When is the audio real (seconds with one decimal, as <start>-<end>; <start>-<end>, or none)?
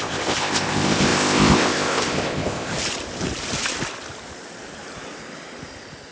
2.7-6.1